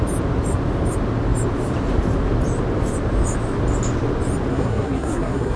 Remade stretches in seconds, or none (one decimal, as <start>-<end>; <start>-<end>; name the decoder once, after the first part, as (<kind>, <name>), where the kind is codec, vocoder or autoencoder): 4.5-5.6 (codec, SNAC)